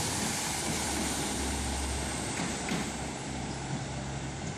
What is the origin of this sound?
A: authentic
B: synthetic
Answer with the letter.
A